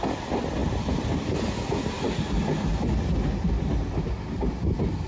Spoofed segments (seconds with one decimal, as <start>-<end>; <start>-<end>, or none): none